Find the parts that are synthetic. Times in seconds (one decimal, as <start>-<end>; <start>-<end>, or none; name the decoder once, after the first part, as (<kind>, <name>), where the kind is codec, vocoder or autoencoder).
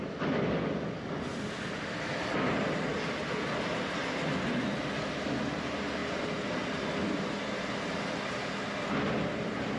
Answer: none